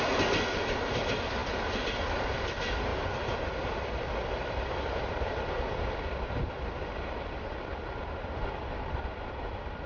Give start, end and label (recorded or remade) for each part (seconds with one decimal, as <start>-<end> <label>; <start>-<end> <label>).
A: 0.0-9.9 recorded